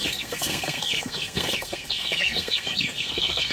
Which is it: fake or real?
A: fake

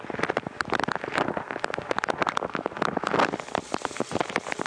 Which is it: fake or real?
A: real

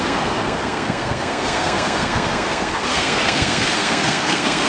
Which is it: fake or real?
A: fake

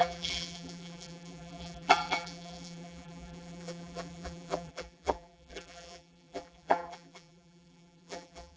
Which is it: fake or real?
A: fake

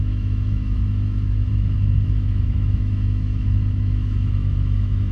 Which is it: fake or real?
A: fake